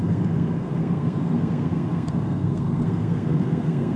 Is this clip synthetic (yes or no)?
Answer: yes